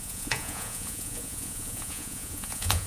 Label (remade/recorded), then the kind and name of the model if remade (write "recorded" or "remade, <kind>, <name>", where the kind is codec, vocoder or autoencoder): remade, vocoder, Vocos